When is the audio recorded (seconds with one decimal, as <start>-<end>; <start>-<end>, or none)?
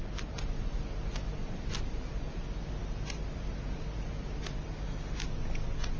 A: 0.0-6.0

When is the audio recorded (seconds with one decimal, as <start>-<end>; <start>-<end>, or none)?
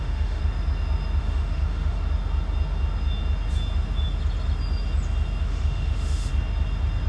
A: 0.4-1.2; 2.0-5.4; 6.3-7.1